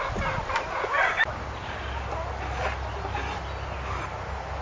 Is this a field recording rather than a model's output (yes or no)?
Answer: yes